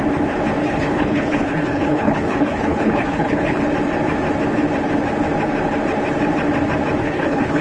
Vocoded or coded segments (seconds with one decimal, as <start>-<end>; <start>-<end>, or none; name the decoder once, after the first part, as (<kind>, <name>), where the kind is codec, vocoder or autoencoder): 0.6-3.6 (codec, HILCodec); 7.0-7.6